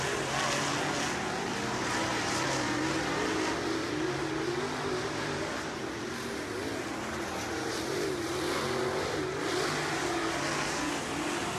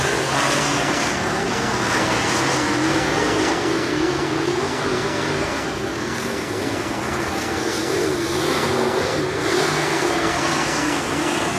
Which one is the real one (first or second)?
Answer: first